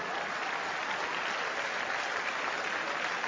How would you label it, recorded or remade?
recorded